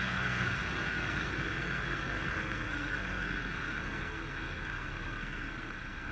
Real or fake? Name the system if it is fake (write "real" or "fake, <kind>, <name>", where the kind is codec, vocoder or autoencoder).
fake, codec, SNAC